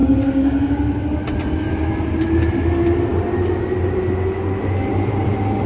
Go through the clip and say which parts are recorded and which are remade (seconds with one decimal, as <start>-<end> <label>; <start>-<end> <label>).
0.0-0.8 remade; 0.8-5.7 recorded